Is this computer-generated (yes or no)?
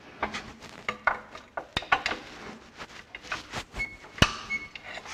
no